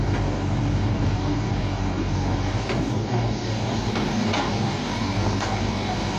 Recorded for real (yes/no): no